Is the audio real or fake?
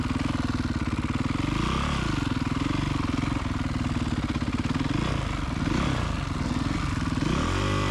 real